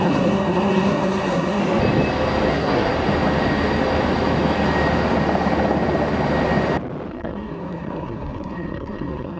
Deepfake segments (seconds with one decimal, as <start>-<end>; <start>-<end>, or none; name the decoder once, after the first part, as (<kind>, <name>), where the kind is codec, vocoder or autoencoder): 0.0-1.6 (codec, SNAC); 2.5-2.9; 7.1-9.4